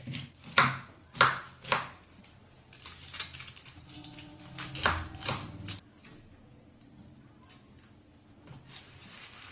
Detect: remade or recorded recorded